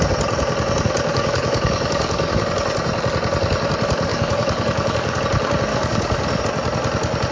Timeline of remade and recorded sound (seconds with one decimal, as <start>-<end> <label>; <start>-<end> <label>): 0.0-1.1 recorded; 1.1-2.4 remade; 2.4-4.1 recorded; 4.1-5.2 remade; 5.2-5.7 recorded; 5.7-6.4 remade; 6.4-7.3 recorded